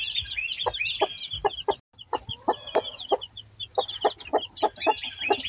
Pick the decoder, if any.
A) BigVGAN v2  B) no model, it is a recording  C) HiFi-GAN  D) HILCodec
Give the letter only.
B